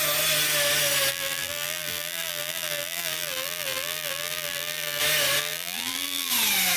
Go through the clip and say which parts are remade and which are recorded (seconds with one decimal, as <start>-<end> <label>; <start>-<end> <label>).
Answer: 0.0-1.1 recorded; 1.1-5.0 remade; 5.0-5.4 recorded; 5.4-6.3 remade; 6.3-6.8 recorded